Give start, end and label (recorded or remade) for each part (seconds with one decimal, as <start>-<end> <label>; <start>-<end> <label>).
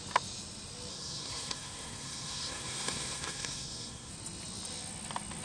0.0-0.9 recorded; 0.9-4.1 remade; 4.1-5.4 recorded